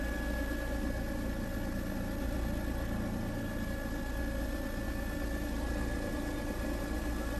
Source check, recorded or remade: recorded